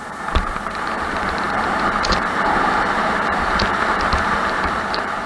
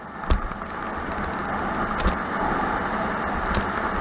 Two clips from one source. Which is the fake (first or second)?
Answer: first